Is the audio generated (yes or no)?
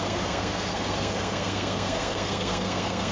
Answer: yes